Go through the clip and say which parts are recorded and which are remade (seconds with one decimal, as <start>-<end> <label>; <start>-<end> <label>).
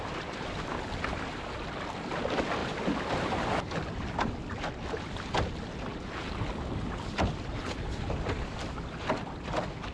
0.0-9.9 recorded